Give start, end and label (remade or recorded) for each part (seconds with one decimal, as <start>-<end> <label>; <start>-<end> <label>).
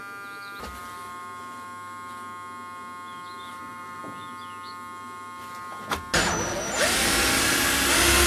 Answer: 0.0-3.5 recorded; 3.5-4.0 remade; 4.0-8.3 recorded